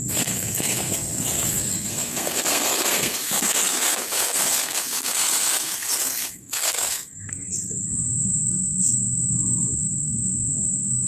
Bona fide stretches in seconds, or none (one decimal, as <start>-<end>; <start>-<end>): none